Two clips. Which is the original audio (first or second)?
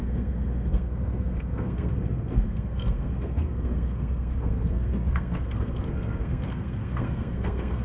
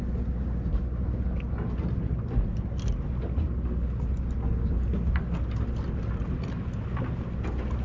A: second